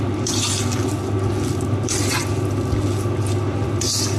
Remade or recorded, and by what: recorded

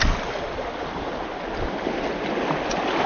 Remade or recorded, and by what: recorded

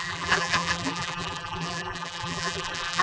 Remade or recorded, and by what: remade, vocoder, BigVGAN v2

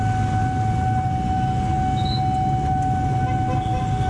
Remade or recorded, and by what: recorded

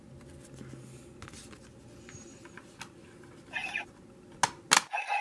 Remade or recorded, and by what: recorded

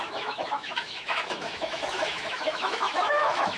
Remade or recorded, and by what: remade, autoencoder, DAC-VAE